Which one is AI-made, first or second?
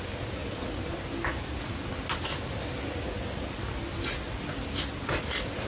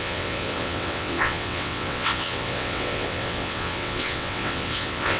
second